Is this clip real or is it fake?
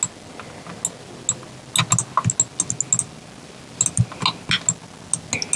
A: real